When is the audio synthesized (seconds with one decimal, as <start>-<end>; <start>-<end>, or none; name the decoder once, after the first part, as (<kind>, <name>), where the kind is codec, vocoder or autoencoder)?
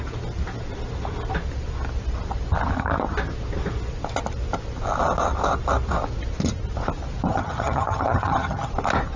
7.3-8.7 (vocoder, HiFi-GAN)